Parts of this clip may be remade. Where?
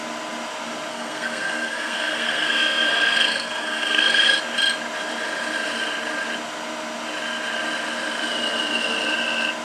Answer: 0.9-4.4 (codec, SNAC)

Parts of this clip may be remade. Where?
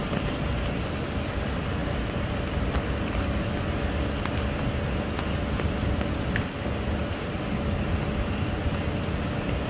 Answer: none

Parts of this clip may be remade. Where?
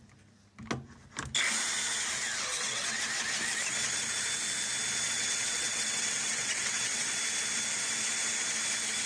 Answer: 2.5-3.0 (vocoder, WaveNeXt); 5.0-7.1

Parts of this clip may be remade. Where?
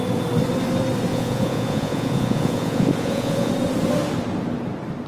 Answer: 1.1-3.5 (vocoder, Vocos)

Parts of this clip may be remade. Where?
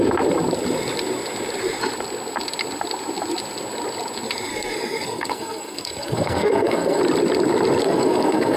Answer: 4.5-7.0 (codec, SNAC); 7.8-8.6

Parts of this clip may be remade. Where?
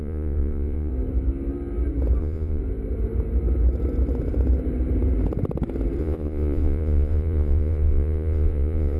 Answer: 0.0-0.9 (vocoder, Vocos); 2.2-2.6; 6.0-9.0